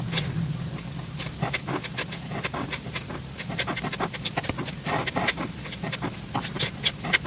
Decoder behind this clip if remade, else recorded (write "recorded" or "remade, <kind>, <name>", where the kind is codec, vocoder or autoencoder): recorded